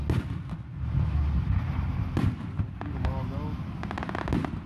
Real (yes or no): yes